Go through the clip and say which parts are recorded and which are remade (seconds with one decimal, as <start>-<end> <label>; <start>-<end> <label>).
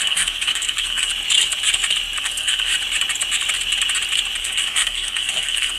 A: 0.0-1.1 remade; 1.1-2.2 recorded; 2.2-2.7 remade; 2.7-4.4 recorded; 4.4-5.8 remade